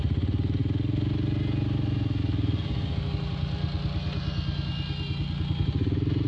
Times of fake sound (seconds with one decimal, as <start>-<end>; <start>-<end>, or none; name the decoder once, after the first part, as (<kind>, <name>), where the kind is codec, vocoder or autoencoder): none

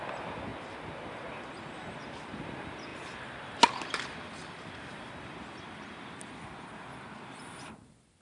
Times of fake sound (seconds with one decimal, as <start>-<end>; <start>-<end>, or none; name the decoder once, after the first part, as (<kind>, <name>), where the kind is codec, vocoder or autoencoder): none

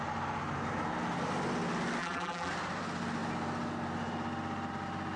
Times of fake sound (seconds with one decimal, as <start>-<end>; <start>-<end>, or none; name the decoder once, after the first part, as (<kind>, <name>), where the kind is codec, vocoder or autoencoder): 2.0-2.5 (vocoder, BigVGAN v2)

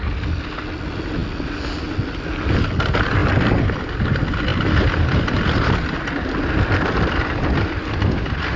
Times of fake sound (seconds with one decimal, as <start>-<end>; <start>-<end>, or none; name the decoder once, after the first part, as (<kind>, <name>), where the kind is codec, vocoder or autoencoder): 4.5-6.3 (vocoder, BigVGAN v2)

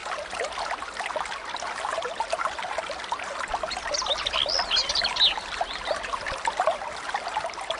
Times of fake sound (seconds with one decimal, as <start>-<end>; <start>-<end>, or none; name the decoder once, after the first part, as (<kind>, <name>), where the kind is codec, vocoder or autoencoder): none

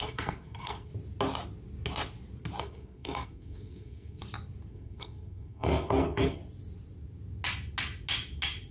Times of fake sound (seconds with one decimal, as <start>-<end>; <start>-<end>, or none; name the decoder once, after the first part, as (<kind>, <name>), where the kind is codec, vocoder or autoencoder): 0.0-0.9 (codec, SNAC); 2.6-4.2; 4.7-6.4

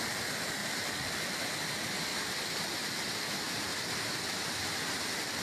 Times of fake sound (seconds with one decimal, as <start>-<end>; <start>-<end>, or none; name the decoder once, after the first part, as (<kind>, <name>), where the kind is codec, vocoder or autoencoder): none

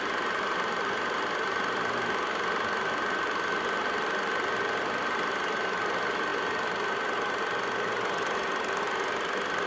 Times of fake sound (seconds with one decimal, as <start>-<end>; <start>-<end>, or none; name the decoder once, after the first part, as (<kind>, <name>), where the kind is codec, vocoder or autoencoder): none